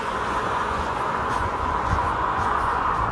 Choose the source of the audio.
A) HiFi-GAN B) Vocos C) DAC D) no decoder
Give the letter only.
B